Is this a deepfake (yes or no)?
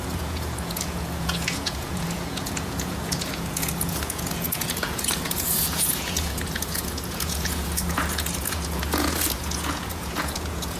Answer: yes